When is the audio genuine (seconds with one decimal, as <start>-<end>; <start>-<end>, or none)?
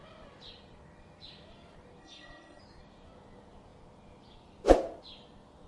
0.0-2.0; 2.6-5.7